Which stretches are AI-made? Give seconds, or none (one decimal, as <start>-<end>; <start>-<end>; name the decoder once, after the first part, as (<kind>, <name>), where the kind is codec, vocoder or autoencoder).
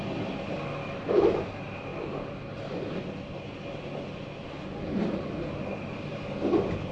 0.8-1.4 (autoencoder, DAC-VAE)